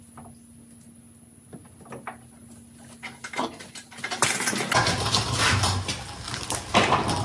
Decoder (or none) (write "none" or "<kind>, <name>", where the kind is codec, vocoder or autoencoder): none